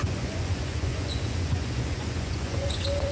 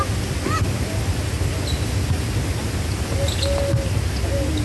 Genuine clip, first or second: second